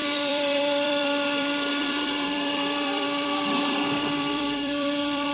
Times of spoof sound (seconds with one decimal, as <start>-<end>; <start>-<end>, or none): 0.0-5.3